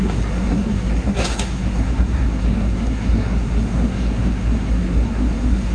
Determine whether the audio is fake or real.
fake